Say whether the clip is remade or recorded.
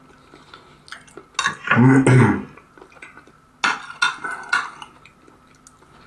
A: recorded